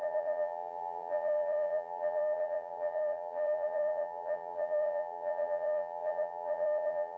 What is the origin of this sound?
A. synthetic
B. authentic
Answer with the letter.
A